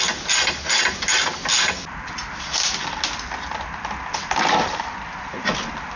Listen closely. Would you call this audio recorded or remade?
recorded